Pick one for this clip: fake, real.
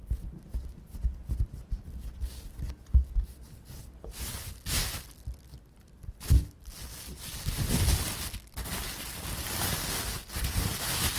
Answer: real